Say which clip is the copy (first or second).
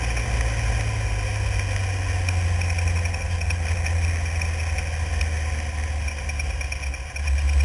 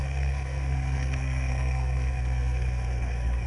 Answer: second